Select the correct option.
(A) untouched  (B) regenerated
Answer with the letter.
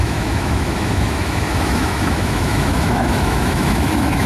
B